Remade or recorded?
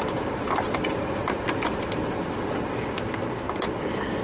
recorded